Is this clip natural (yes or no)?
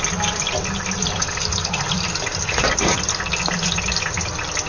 yes